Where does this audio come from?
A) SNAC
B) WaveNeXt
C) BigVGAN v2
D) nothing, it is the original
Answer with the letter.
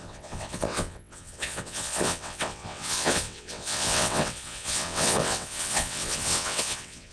B